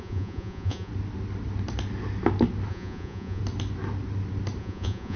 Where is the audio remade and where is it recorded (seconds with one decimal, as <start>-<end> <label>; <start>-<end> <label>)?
0.0-0.9 remade; 0.9-2.7 recorded; 2.7-3.4 remade; 3.4-4.6 recorded; 4.6-5.2 remade